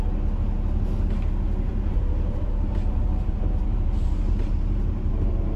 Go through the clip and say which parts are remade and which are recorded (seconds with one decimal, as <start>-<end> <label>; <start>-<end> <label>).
0.0-1.7 recorded; 1.7-5.1 remade; 5.1-5.6 recorded